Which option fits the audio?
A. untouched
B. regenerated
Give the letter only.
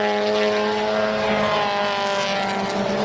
A